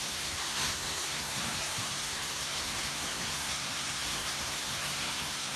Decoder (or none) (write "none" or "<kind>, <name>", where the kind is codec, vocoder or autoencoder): codec, SNAC